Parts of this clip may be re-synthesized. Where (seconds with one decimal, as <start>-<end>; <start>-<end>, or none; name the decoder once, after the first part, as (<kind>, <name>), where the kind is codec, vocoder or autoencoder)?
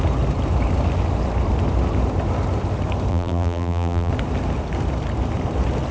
3.1-4.1 (vocoder, BigVGAN v2)